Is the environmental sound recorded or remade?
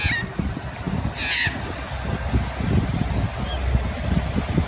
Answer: recorded